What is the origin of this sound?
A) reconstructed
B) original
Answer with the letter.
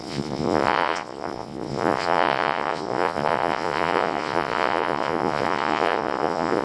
A